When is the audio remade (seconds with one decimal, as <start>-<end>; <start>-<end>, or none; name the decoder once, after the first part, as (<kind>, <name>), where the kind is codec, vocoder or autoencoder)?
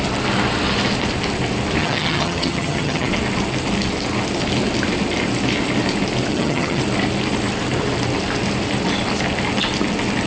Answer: 1.8-3.1 (vocoder, HiFi-GAN); 6.3-6.8